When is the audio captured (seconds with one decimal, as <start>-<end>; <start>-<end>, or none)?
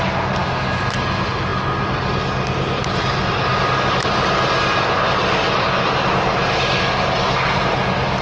0.0-8.2